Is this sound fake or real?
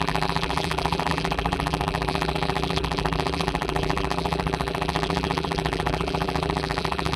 fake